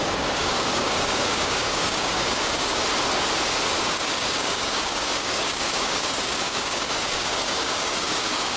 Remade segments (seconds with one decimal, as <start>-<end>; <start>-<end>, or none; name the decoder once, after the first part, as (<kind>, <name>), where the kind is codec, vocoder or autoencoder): 0.0-2.8 (codec, DAC); 3.8-8.6